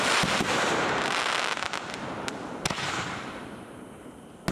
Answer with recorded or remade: recorded